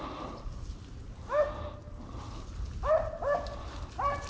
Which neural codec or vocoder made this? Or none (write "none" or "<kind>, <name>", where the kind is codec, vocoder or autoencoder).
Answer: none